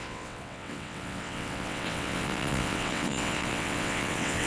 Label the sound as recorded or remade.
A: remade